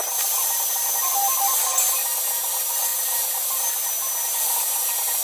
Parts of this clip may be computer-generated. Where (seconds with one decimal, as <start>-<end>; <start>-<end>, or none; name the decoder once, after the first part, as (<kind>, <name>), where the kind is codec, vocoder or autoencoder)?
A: none